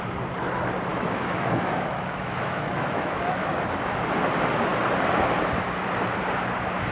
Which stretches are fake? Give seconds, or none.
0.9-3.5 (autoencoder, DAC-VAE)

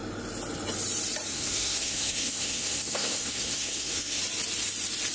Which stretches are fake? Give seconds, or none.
1.3-4.2 (codec, SNAC)

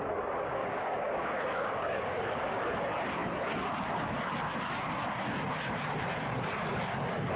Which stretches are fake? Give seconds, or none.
0.6-2.6 (codec, DAC)

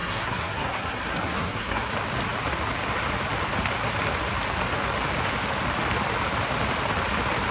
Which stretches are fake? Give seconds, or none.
0.0-1.9 (codec, SNAC)

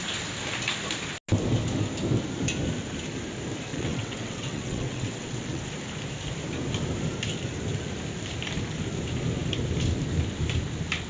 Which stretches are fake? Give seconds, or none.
3.7-5.6 (vocoder, WaveNeXt)

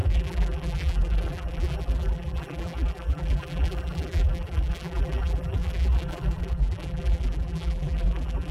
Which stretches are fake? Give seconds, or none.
0.0-8.5 (vocoder, BigVGAN v2)

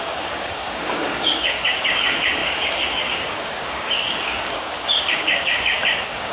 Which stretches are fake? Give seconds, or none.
0.0-6.3 (codec, DAC)